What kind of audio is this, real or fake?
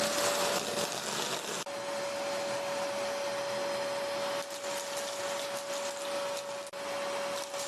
real